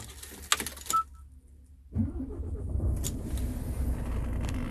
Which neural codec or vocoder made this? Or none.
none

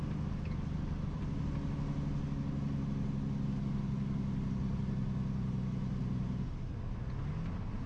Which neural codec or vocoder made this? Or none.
none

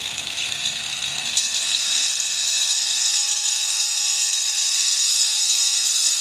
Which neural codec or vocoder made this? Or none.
codec, SNAC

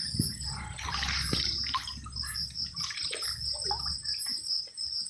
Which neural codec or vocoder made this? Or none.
none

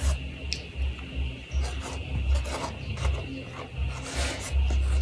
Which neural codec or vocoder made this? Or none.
none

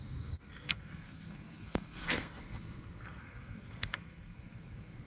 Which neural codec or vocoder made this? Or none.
codec, SNAC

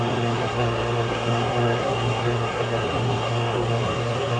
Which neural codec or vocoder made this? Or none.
codec, SNAC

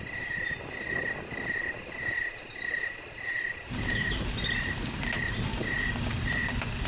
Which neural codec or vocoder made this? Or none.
none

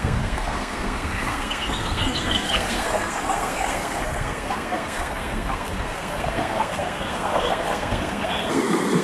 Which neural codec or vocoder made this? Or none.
codec, SNAC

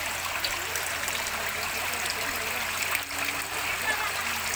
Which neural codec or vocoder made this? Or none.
none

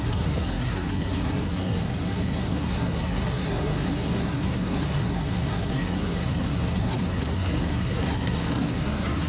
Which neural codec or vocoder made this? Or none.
codec, SNAC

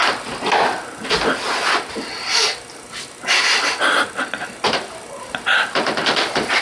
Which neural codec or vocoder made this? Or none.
none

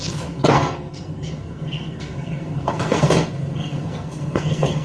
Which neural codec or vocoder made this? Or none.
codec, SNAC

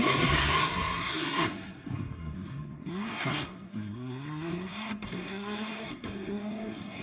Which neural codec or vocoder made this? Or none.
codec, SNAC